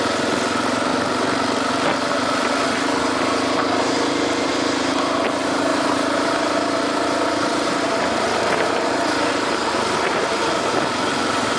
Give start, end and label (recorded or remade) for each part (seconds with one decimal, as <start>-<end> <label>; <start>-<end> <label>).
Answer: 0.0-5.7 recorded; 5.7-10.3 remade; 10.3-11.6 recorded